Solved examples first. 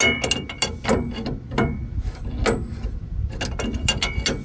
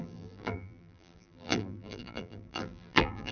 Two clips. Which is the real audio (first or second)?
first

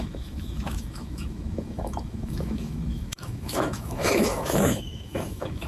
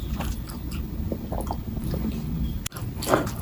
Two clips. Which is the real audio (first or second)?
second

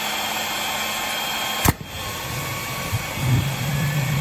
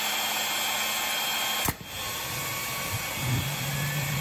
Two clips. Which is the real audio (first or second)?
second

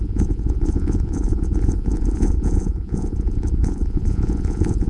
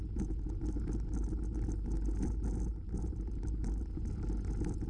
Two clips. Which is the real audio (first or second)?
second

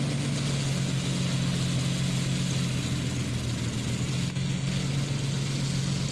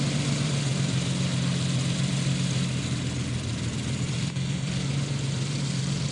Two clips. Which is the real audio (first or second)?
first